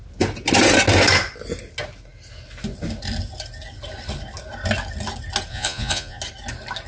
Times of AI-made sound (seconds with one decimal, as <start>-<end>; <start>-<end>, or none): 5.5-6.2